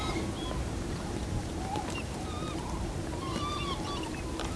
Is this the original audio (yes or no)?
no